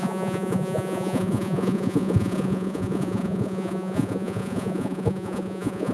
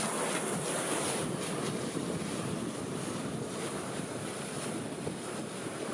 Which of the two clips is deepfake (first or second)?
first